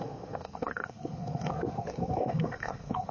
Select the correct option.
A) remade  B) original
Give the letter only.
A